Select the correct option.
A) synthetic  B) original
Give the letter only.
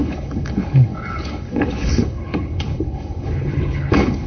A